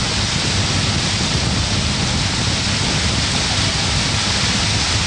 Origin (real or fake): real